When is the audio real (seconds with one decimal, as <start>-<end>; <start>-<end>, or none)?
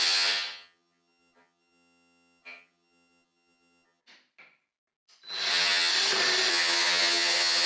4.0-5.5; 5.9-6.5